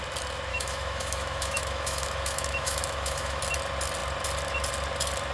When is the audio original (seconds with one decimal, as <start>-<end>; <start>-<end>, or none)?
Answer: 0.0-0.5; 3.4-5.3